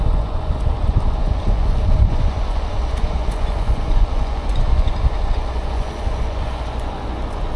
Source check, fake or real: fake